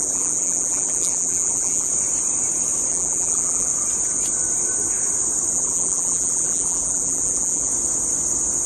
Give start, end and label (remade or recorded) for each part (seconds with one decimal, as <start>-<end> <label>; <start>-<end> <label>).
0.0-1.9 remade; 1.9-2.9 recorded; 2.9-3.7 remade; 3.7-5.5 recorded; 5.5-7.7 remade; 7.7-8.7 recorded